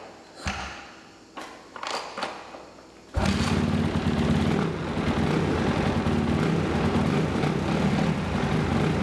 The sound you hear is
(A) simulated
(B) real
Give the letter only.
B